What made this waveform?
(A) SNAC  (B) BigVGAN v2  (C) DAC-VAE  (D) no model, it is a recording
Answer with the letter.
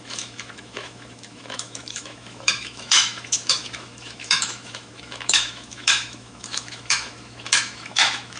C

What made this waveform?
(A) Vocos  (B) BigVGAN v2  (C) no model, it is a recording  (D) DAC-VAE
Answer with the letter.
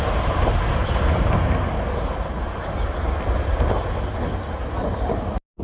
C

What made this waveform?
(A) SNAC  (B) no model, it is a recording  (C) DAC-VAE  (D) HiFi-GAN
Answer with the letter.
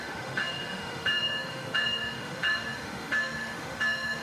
C